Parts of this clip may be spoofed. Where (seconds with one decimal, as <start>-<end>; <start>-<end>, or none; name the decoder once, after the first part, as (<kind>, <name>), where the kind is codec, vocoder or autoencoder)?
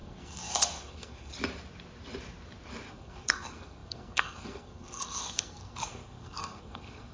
0.0-1.3 (codec, SNAC); 2.9-7.1